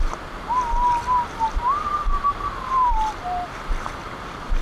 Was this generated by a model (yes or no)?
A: no